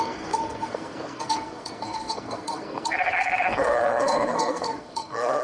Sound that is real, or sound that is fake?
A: fake